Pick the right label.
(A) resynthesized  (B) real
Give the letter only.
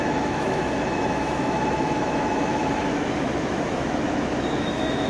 A